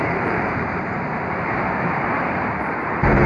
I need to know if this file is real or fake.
fake